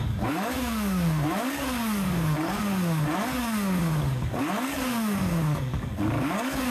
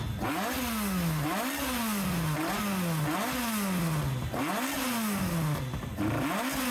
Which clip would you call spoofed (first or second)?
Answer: first